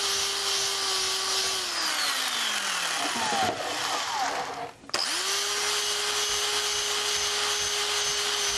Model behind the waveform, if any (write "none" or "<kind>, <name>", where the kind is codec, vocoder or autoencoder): none